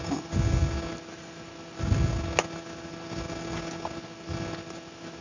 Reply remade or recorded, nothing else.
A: recorded